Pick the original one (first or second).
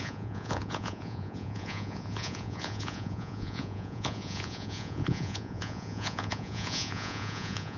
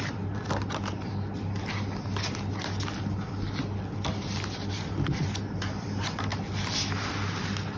second